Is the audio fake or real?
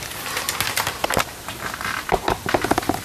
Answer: real